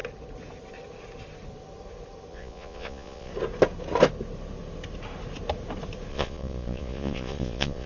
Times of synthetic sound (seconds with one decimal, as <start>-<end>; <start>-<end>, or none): 2.3-3.3; 6.1-7.9